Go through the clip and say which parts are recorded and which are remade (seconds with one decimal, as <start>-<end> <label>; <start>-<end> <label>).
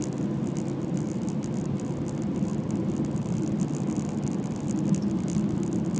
0.0-6.0 recorded